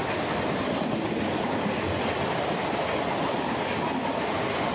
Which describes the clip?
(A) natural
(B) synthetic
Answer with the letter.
A